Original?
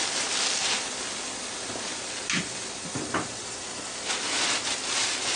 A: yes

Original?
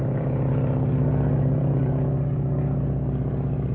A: no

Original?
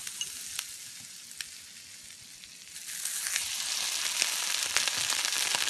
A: yes